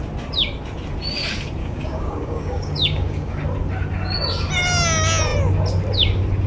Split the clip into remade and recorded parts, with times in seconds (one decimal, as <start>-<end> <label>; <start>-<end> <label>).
0.0-1.6 recorded; 1.6-3.3 remade; 3.3-6.5 recorded